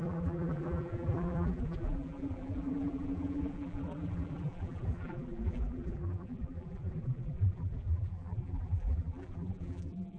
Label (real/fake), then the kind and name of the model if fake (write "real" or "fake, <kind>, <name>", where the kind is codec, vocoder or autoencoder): fake, vocoder, BigVGAN v2